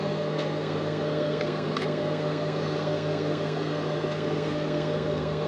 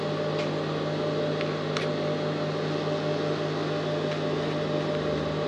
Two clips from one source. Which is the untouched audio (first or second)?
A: second